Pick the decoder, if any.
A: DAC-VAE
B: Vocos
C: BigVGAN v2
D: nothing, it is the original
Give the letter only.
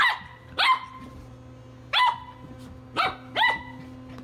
D